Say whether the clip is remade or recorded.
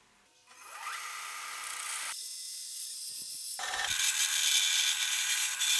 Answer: recorded